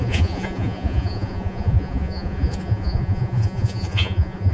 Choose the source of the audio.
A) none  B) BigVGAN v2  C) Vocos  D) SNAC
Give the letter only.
C